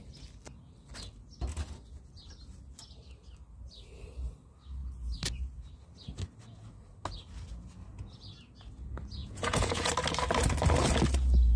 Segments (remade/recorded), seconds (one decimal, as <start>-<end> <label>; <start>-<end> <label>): 0.0-9.2 recorded; 9.2-9.9 remade; 9.9-11.6 recorded